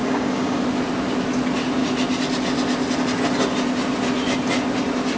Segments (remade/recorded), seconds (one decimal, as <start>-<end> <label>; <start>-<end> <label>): 0.0-0.6 remade; 0.6-5.2 recorded